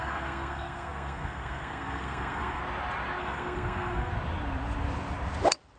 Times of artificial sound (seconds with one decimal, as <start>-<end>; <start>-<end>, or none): 0.0-2.6; 3.2-4.1